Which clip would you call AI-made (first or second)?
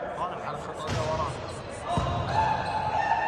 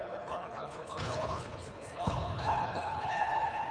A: second